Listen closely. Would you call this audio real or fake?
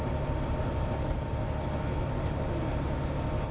real